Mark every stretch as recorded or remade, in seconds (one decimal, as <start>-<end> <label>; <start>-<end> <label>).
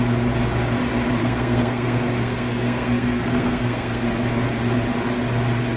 0.0-1.2 recorded; 1.2-4.1 remade; 4.1-5.8 recorded